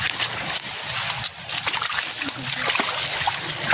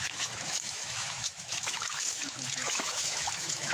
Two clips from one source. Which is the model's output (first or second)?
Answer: second